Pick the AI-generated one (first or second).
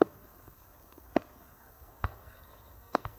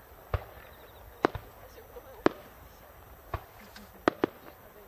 first